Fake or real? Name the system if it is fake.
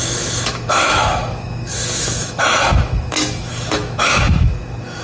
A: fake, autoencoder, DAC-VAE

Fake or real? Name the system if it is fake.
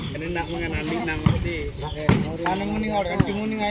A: real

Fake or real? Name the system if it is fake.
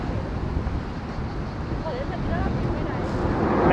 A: real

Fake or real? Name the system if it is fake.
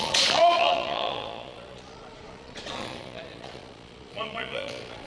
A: fake, vocoder, Vocos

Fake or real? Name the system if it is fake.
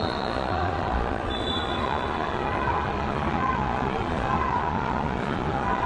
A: fake, vocoder, Vocos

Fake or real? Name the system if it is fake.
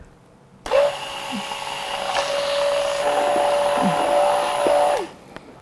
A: real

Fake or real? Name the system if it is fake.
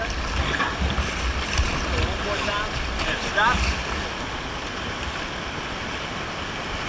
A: real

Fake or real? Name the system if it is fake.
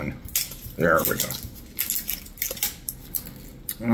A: real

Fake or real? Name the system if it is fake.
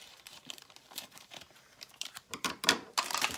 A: fake, vocoder, BigVGAN v2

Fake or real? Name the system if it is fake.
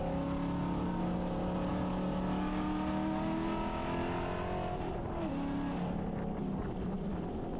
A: real